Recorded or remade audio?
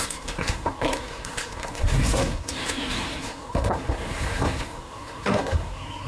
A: remade